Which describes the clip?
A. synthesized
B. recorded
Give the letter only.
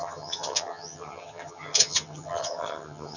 A